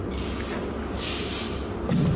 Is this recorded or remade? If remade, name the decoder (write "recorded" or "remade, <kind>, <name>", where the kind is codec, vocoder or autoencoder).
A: recorded